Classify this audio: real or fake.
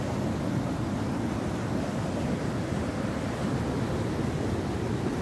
real